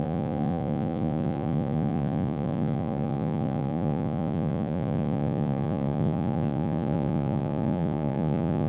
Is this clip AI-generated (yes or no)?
yes